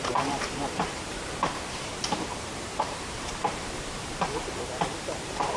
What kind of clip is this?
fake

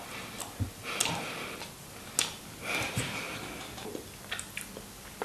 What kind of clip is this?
real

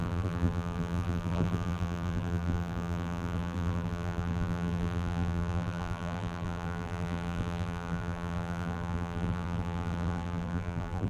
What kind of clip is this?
fake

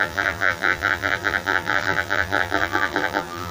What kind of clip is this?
fake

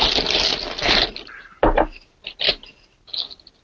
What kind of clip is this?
real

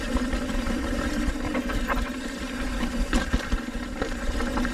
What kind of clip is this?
fake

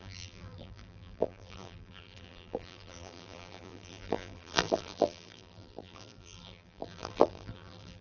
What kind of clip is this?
fake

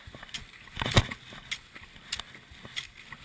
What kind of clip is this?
real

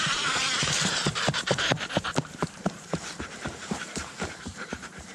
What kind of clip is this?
fake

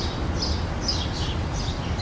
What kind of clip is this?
real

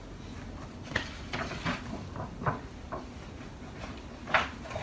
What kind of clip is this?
real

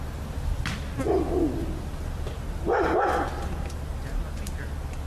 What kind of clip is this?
real